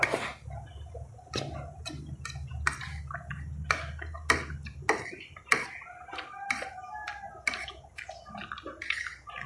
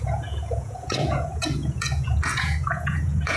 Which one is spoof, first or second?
second